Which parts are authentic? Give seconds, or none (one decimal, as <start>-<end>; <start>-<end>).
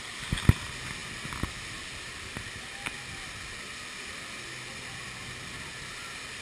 0.0-6.4